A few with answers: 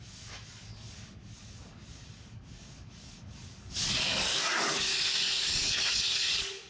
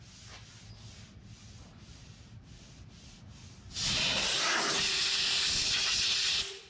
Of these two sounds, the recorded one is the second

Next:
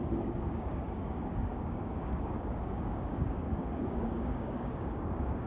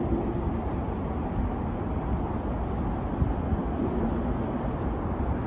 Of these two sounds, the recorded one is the second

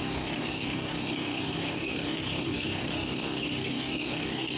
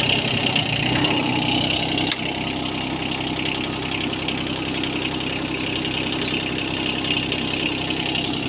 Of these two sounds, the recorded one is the second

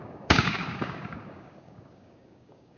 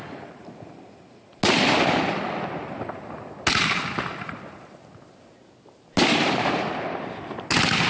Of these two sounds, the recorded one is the second